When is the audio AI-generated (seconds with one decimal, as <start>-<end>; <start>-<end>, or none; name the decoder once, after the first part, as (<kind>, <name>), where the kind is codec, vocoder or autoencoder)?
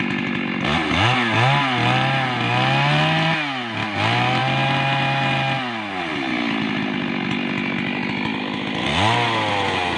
none